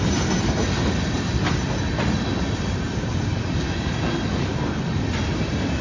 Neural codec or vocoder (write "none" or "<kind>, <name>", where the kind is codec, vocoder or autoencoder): none